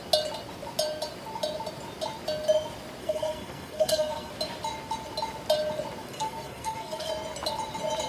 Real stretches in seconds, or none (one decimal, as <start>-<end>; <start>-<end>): 0.0-3.0; 4.3-6.0; 7.1-8.1